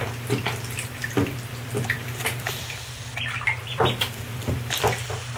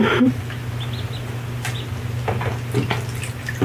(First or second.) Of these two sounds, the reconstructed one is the first